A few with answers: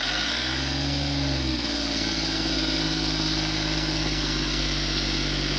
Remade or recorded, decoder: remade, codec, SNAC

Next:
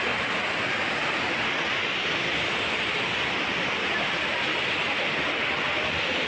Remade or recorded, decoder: recorded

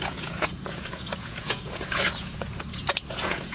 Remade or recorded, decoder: remade, vocoder, Vocos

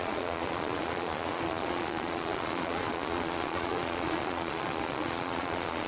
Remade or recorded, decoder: remade, vocoder, Vocos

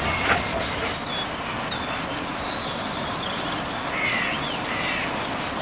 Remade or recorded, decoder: recorded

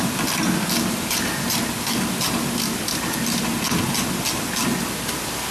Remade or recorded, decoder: recorded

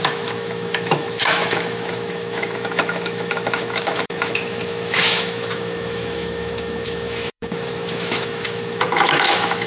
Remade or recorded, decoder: remade, autoencoder, DAC-VAE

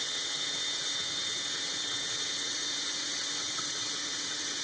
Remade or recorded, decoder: remade, vocoder, WaveNeXt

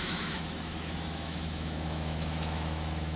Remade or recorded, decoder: remade, autoencoder, DAC-VAE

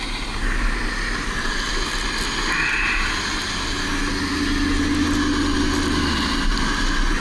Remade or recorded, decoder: recorded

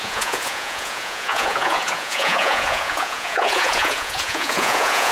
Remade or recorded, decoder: remade, vocoder, Vocos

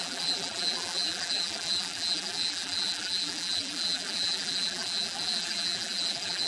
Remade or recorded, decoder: remade, vocoder, BigVGAN v2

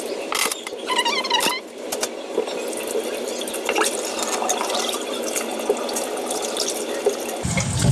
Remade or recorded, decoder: recorded